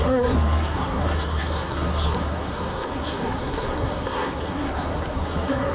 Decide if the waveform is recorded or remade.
remade